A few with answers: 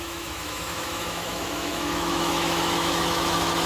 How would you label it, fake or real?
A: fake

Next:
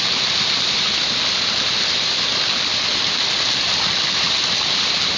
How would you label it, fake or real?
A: real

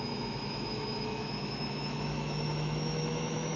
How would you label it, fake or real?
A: fake